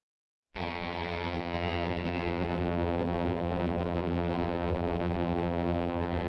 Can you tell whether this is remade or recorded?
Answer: remade